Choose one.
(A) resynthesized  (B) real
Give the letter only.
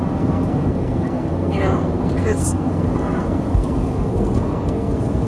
A